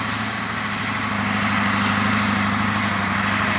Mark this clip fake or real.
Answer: real